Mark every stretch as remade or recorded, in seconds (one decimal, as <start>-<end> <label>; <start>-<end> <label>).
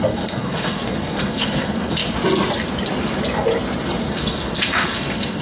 0.0-2.0 remade; 2.0-4.1 recorded; 4.1-5.4 remade